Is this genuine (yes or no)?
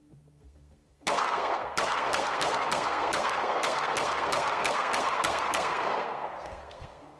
no